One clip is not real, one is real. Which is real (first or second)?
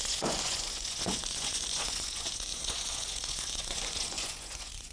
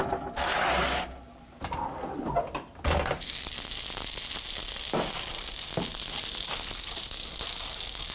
second